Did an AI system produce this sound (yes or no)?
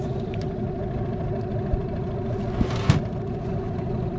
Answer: no